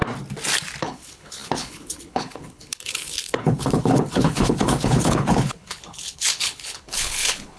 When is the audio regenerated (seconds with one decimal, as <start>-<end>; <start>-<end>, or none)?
0.8-7.6